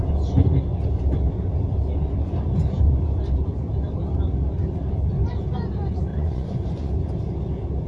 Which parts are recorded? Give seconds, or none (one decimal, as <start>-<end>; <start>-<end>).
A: 0.0-6.1; 6.9-7.9